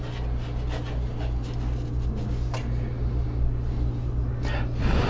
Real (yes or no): yes